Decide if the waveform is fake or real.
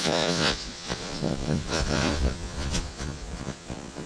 fake